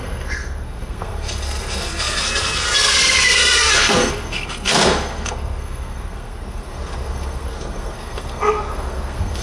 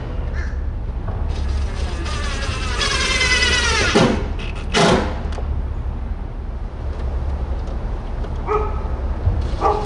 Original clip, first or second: second